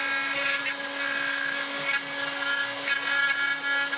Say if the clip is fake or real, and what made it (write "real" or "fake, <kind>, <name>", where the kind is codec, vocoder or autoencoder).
real